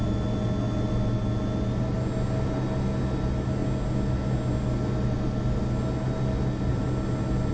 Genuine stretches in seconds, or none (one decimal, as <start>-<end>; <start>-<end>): 0.0-7.5